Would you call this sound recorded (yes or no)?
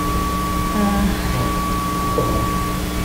yes